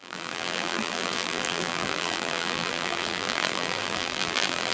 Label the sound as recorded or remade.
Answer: remade